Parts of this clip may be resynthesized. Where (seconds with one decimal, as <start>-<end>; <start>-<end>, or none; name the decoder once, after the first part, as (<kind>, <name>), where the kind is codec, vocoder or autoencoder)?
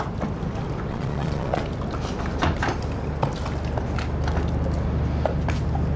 0.9-1.6 (vocoder, Vocos)